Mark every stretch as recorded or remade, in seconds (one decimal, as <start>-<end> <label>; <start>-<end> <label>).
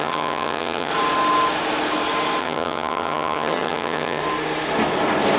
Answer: 0.0-0.9 remade; 0.9-2.4 recorded; 2.4-4.2 remade; 4.2-5.4 recorded